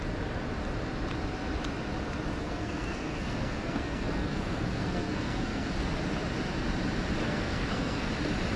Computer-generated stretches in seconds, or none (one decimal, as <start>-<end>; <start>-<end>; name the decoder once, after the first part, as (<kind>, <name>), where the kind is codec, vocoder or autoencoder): 2.4-5.7 (codec, SNAC); 7.2-8.1